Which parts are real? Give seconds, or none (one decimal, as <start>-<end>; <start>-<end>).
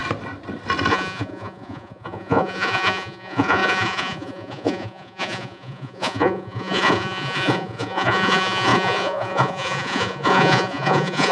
0.0-0.9